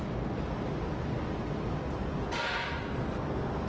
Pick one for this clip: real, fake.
real